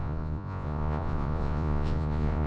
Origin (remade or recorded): remade